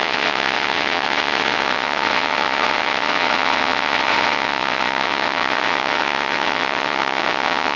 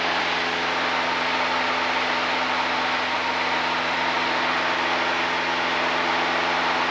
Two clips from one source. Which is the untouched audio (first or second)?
second